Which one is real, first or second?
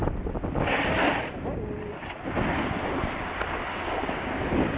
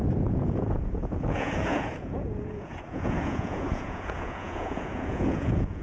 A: first